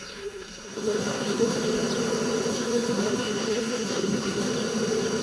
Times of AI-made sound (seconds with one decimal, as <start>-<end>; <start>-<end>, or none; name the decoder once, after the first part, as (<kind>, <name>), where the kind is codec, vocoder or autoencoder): 0.0-1.6 (codec, SNAC); 2.5-4.5